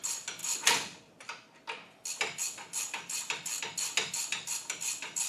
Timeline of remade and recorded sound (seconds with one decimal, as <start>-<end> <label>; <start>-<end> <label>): 0.0-5.3 recorded